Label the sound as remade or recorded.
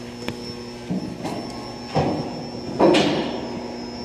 recorded